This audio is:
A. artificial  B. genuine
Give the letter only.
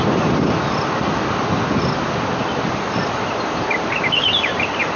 B